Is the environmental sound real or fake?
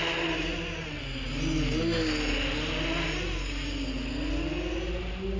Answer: real